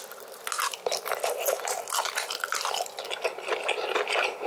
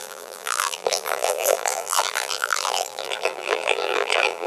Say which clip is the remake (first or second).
second